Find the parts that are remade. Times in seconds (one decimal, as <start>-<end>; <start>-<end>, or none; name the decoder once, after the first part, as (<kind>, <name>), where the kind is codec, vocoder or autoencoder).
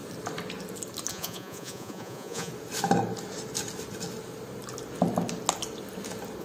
1.1-2.5 (vocoder, Vocos)